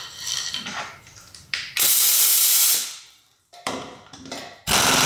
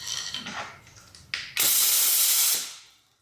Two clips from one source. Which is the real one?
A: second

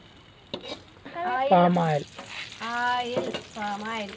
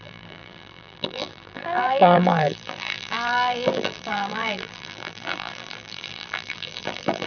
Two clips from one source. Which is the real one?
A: first